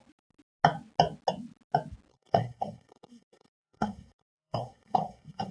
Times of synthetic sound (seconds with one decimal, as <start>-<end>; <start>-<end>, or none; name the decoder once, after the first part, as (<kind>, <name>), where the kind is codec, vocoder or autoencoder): 2.1-5.5 (codec, SNAC)